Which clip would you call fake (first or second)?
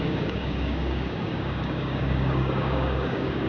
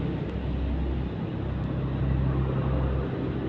first